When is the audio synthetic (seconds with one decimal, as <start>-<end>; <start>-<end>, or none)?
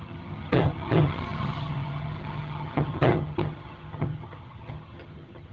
0.0-5.5